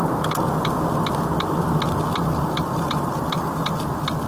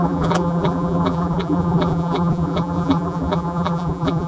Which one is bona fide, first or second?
first